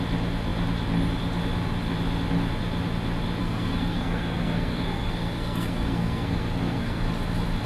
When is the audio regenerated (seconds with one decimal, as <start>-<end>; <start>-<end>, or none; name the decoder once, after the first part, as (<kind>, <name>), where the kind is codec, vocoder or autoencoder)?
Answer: 3.4-7.1 (codec, SNAC)